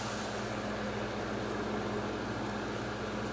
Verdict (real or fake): real